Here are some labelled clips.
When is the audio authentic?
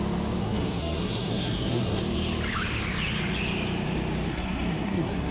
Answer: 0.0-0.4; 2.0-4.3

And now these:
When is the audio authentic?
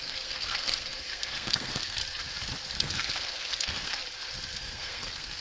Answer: 2.0-2.7; 4.0-4.6